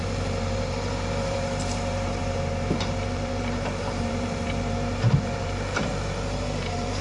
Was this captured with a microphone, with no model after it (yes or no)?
no